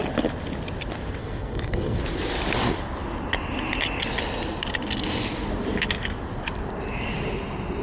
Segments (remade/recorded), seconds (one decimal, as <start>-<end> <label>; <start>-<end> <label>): 0.0-1.2 recorded; 1.2-2.0 remade; 2.0-7.8 recorded